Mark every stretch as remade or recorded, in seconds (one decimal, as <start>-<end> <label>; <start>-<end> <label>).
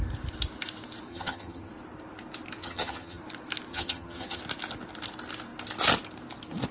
0.0-1.1 recorded; 1.1-1.7 remade; 1.7-2.6 recorded; 2.6-3.2 remade; 3.2-3.7 recorded; 3.7-4.4 remade; 4.4-6.7 recorded